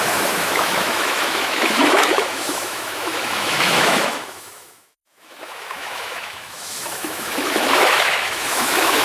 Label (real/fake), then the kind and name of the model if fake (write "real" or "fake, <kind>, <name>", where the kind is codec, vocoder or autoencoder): fake, autoencoder, DAC-VAE